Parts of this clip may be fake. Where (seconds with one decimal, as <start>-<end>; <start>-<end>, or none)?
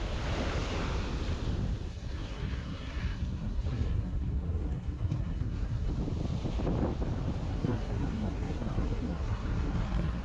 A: 1.9-5.9; 7.5-10.2